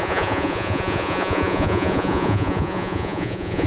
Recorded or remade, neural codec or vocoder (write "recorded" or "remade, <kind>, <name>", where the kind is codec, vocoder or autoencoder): remade, vocoder, Vocos